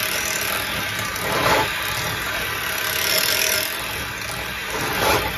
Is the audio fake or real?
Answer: real